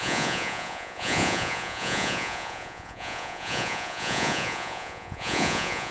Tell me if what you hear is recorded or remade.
remade